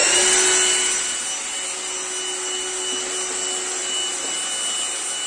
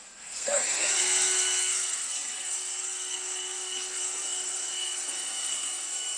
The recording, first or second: first